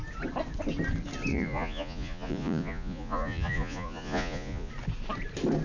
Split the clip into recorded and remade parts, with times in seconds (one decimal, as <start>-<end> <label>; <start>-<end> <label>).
0.0-1.3 recorded; 1.3-4.7 remade; 4.7-5.6 recorded